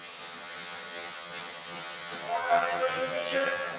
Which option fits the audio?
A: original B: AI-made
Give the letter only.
B